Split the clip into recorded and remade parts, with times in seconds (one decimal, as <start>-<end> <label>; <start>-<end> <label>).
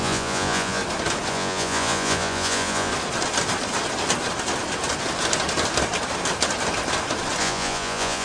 0.0-0.8 remade; 0.8-1.3 recorded; 1.3-2.9 remade; 2.9-7.4 recorded; 7.4-8.2 remade